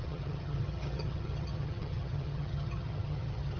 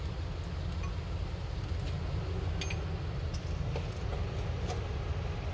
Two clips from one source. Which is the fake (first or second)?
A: first